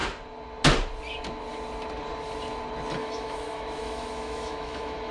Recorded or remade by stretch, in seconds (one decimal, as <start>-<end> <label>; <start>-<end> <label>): 0.0-3.0 recorded; 3.0-5.1 remade